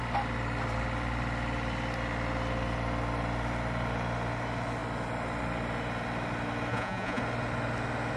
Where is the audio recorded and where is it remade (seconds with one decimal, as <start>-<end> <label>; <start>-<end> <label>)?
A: 0.0-6.7 recorded; 6.7-7.2 remade; 7.2-8.2 recorded